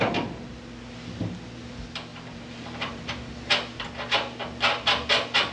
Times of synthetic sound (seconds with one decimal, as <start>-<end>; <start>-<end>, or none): 2.1-3.3